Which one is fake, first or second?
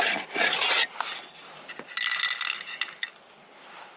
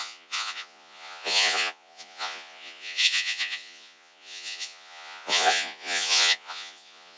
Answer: second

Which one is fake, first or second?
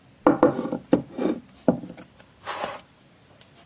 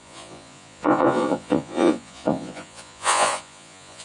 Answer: second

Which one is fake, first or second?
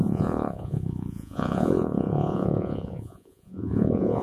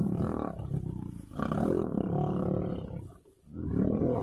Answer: first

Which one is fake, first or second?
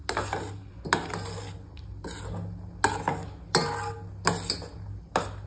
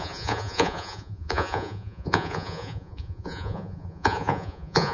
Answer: second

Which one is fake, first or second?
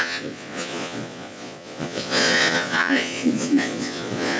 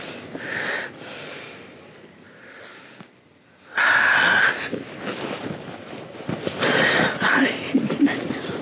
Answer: first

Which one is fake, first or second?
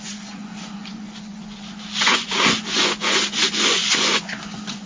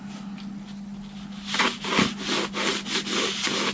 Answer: first